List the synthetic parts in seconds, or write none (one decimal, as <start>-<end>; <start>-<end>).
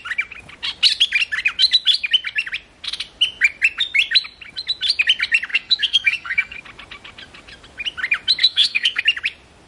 5.5-6.6; 8.4-9.0